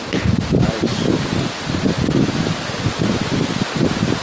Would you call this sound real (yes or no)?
yes